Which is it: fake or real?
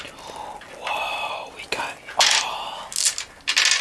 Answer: real